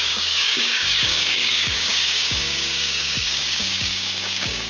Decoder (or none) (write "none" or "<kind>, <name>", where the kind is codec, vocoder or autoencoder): codec, DAC